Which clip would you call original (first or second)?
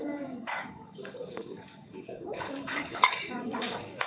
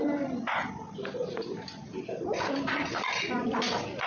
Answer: second